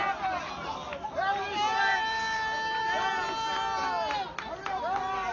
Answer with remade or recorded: recorded